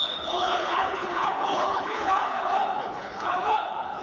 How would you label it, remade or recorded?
remade